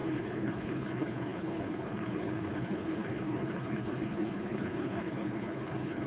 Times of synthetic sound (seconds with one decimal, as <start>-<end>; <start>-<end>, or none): 0.0-6.1